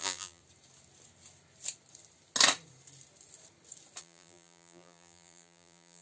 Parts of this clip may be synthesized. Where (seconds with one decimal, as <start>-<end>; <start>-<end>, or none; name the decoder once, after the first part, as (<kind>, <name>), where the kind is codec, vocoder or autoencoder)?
0.0-0.4 (vocoder, BigVGAN v2); 4.0-6.0